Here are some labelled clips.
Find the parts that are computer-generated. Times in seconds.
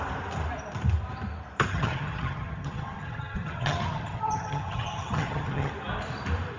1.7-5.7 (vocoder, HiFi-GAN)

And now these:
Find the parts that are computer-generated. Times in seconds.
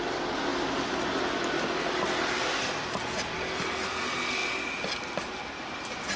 none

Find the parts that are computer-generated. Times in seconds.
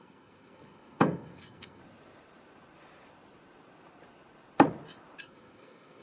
0.0-1.8 (codec, SNAC); 5.2-6.0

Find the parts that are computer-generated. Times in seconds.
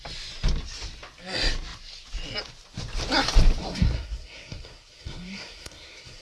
3.6-6.2 (codec, SNAC)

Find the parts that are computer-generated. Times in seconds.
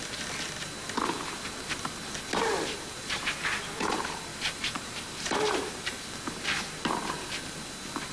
4.3-6.0 (vocoder, BigVGAN v2)